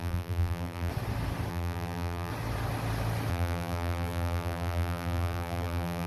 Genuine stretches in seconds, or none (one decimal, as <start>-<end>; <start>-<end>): 0.9-1.5; 2.3-3.3